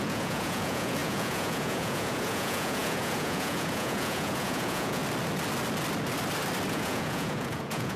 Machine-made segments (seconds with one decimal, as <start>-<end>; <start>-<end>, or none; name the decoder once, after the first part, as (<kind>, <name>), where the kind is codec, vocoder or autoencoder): 0.0-5.0 (vocoder, Vocos); 6.7-8.0